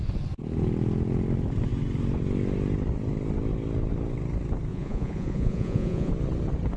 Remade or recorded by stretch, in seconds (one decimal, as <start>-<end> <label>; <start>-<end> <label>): 0.0-4.7 recorded; 4.7-6.1 remade; 6.1-6.8 recorded